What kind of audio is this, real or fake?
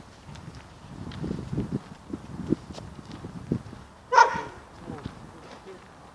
fake